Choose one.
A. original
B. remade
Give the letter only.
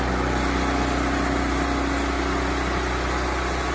A